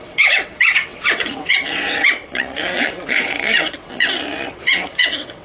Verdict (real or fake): fake